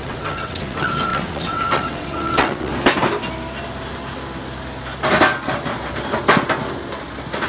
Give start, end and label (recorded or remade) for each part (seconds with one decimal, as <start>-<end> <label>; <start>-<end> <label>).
0.0-2.7 remade; 2.7-7.5 recorded